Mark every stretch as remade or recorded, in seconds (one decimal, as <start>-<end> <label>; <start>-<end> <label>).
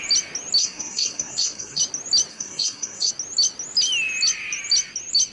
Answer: 0.0-0.6 recorded; 0.6-1.8 remade; 1.8-2.3 recorded; 2.3-3.1 remade; 3.1-5.3 recorded